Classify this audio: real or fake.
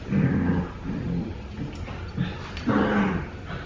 real